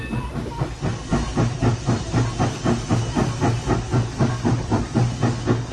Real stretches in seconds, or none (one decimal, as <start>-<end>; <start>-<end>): 0.0-5.7